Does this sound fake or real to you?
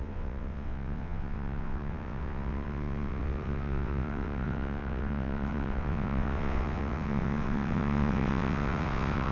fake